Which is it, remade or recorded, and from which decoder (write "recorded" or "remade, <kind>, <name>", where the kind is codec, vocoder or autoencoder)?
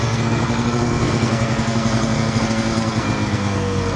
remade, codec, SNAC